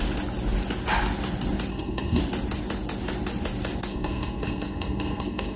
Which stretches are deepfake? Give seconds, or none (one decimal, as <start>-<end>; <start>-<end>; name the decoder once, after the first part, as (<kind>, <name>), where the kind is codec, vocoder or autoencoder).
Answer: 1.7-2.2 (codec, SNAC); 3.9-5.6